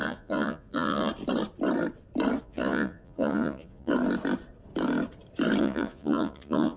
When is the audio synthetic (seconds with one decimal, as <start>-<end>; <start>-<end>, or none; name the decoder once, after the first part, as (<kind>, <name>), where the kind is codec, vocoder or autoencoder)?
0.0-1.1 (vocoder, Vocos); 2.4-3.9; 5.6-6.8